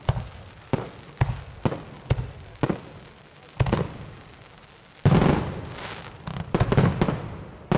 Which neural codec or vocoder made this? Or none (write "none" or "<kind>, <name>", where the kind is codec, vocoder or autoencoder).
none